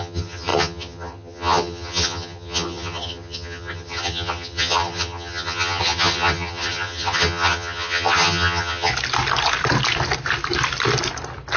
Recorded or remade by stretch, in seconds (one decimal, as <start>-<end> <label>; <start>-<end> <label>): 0.0-8.9 remade; 8.9-11.6 recorded